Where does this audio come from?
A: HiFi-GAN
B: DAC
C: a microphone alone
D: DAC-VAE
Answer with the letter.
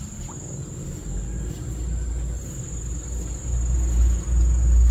C